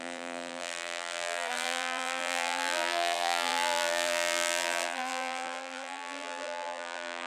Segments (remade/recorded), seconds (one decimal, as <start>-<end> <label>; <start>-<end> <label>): 0.0-7.3 remade